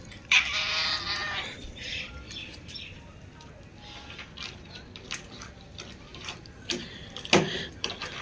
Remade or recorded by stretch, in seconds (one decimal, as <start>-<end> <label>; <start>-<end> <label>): 0.0-6.1 recorded; 6.1-7.0 remade; 7.0-8.2 recorded